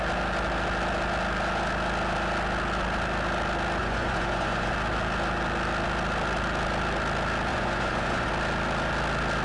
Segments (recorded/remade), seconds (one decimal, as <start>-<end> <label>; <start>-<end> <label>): 0.0-3.8 recorded; 3.8-4.7 remade; 4.7-7.5 recorded; 7.5-8.3 remade; 8.3-9.4 recorded